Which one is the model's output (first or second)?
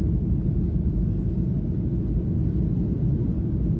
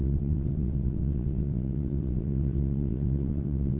second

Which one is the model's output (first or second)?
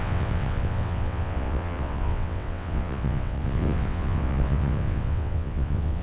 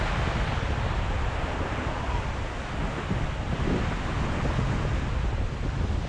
first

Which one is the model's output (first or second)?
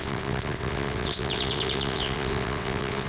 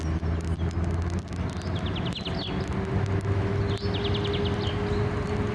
first